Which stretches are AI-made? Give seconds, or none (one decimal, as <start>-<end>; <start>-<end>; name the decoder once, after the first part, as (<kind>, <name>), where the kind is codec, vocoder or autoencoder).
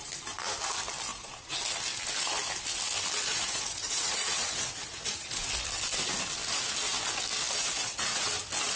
1.1-1.6 (vocoder, Vocos); 3.3-5.5; 7.6-8.3